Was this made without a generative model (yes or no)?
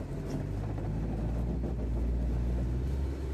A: yes